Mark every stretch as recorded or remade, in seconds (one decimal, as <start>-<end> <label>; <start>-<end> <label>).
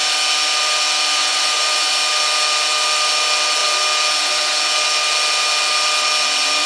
0.0-1.2 recorded; 1.2-1.9 remade; 1.9-6.7 recorded